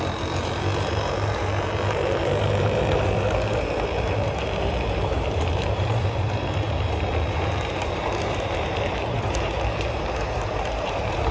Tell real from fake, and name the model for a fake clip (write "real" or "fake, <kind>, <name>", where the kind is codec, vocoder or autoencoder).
fake, vocoder, BigVGAN v2